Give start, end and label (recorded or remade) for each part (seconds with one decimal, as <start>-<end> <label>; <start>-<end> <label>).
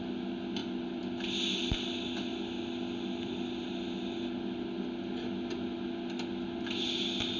0.0-7.4 recorded